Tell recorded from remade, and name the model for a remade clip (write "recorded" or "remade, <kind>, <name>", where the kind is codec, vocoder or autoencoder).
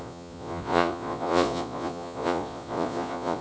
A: remade, vocoder, Vocos